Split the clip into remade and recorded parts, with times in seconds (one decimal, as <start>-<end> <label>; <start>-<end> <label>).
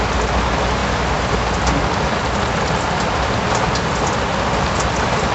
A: 0.0-5.3 recorded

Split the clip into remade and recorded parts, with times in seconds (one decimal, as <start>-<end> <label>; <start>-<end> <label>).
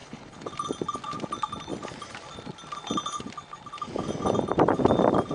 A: 0.0-0.5 remade; 0.5-5.3 recorded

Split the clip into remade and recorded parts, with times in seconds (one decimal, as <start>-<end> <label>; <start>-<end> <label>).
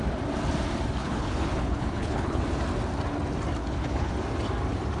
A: 0.0-1.0 recorded; 1.0-2.4 remade; 2.4-3.6 recorded; 3.6-4.1 remade; 4.1-5.0 recorded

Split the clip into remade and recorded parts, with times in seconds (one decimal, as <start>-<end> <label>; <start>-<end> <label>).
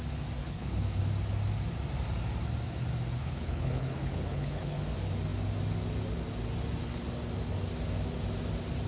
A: 0.0-0.4 recorded; 0.4-1.0 remade; 1.0-3.2 recorded; 3.2-4.8 remade; 4.8-8.9 recorded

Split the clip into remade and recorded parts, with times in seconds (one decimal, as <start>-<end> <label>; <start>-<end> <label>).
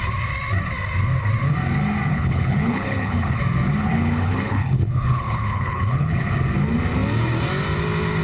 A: 0.0-2.1 recorded; 2.1-3.4 remade; 3.4-3.8 recorded; 3.8-6.3 remade; 6.3-8.2 recorded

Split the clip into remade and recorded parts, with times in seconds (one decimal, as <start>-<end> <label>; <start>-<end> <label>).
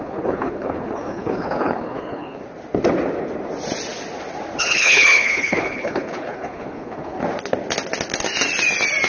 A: 0.0-2.4 remade; 2.4-4.6 recorded; 4.6-7.2 remade; 7.2-9.1 recorded